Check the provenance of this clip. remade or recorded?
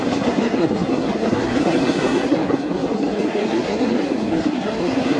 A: remade